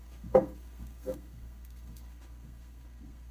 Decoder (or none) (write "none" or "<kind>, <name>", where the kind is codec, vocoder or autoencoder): codec, SNAC